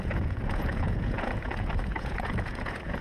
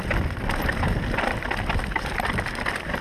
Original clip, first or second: second